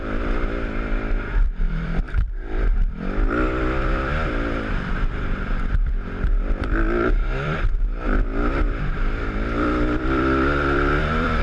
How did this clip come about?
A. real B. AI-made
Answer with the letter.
B